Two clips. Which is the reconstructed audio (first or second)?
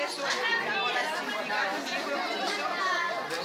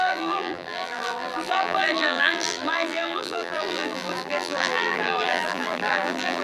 second